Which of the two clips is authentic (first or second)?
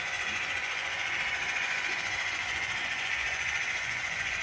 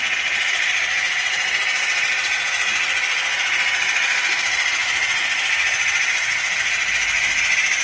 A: second